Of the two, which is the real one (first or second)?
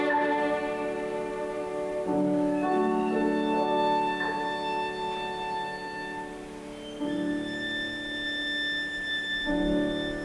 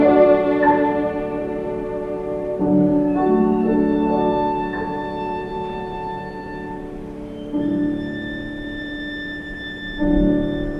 first